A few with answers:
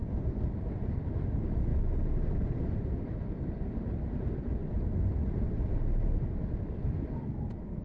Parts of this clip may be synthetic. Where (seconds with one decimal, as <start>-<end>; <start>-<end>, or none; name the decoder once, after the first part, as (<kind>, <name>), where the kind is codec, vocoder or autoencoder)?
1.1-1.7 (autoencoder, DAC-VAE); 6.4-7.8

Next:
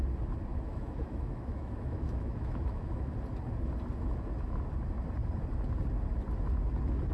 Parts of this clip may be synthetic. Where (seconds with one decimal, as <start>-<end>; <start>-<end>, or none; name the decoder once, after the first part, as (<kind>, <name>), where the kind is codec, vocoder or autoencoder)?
0.5-3.1 (autoencoder, DAC-VAE)

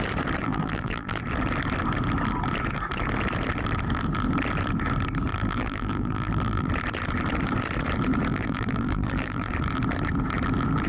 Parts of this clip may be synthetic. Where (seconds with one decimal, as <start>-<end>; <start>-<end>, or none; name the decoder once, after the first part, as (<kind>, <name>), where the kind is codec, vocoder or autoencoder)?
0.4-1.2 (vocoder, BigVGAN v2); 5.3-6.7; 8.3-9.5

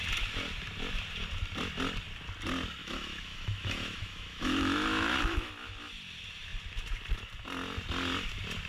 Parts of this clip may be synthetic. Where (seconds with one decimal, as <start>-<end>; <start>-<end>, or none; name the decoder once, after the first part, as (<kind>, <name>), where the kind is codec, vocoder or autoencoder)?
2.8-5.5 (autoencoder, DAC-VAE)